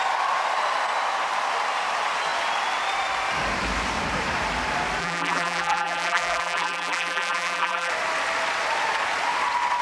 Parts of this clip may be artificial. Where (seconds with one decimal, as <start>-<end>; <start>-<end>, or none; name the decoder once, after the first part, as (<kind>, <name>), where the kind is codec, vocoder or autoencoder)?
5.0-7.9 (vocoder, BigVGAN v2)